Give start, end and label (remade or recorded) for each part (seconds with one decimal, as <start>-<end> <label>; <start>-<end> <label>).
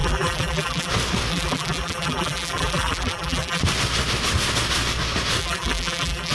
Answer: 0.0-0.9 remade; 0.9-1.3 recorded; 1.3-3.6 remade; 3.6-5.4 recorded; 5.4-6.3 remade